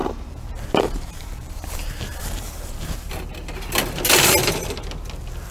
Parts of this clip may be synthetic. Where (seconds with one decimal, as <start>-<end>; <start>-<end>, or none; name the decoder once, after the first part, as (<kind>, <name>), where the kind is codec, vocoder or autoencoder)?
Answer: 0.0-3.2 (vocoder, BigVGAN v2)